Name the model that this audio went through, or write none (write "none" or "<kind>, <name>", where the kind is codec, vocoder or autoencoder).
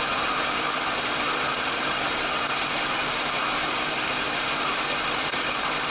vocoder, BigVGAN v2